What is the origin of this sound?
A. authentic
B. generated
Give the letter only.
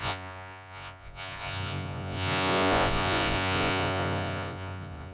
B